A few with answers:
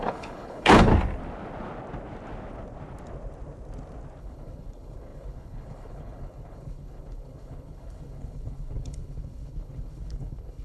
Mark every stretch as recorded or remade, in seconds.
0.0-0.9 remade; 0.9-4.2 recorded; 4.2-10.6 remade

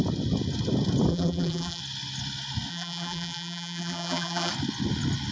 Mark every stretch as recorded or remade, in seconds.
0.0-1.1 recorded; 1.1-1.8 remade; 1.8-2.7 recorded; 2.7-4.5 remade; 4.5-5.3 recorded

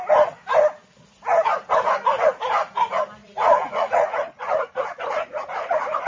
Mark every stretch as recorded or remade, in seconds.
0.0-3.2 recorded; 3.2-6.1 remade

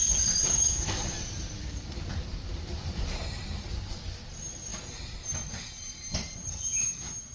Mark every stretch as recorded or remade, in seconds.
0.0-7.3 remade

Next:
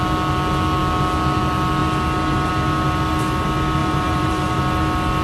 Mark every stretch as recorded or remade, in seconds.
0.0-3.8 recorded; 3.8-4.6 remade; 4.6-5.2 recorded

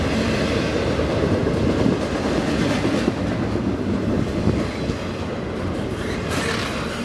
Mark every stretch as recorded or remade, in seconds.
0.0-1.4 remade; 1.4-5.6 recorded; 5.6-7.0 remade